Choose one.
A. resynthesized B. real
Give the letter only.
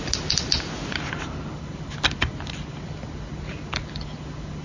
B